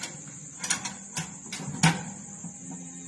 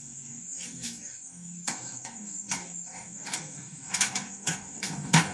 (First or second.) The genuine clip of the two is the first